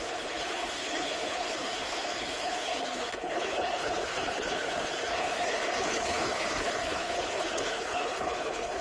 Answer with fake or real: fake